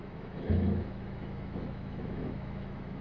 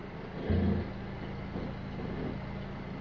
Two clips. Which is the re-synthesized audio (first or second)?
first